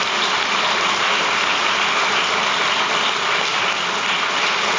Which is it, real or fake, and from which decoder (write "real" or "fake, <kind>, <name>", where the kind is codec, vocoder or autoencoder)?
real